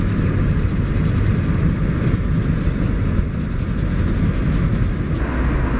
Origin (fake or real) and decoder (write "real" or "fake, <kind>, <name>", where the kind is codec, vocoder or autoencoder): real